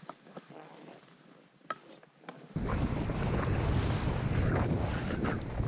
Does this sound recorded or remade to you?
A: remade